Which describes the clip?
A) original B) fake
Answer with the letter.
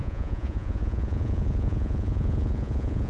B